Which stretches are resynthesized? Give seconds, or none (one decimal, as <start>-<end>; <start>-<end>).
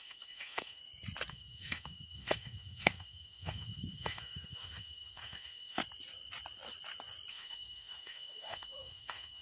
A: 0.0-0.8; 1.3-5.8; 7.3-9.4